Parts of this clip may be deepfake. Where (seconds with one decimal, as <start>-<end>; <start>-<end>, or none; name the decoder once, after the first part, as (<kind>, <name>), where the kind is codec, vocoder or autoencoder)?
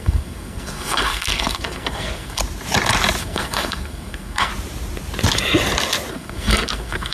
0.0-2.4 (codec, SNAC); 3.2-4.5; 6.1-7.1